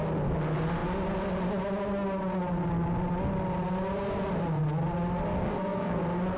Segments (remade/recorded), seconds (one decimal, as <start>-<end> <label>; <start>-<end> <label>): 0.0-5.4 recorded; 5.4-6.0 remade; 6.0-6.4 recorded